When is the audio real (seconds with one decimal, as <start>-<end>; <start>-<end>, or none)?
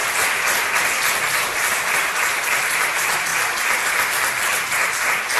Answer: none